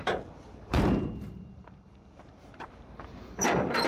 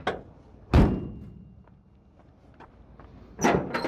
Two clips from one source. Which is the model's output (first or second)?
first